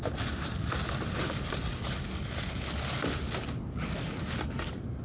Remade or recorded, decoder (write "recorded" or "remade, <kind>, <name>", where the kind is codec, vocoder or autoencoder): recorded